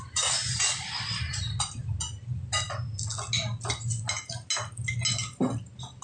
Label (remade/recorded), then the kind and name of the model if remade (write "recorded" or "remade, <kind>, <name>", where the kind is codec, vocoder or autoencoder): recorded